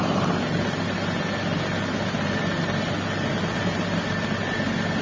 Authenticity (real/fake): real